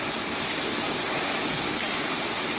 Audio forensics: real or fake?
real